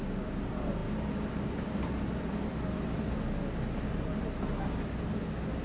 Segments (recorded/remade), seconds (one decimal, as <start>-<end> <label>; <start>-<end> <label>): 0.0-5.6 recorded